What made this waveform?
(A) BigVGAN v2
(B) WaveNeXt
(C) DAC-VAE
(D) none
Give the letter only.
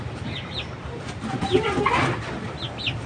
D